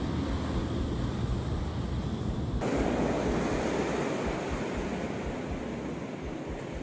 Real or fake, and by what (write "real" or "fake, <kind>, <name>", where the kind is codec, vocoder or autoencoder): real